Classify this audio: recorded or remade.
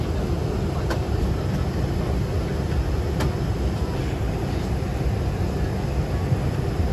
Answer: recorded